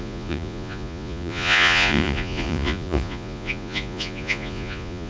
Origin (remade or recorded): remade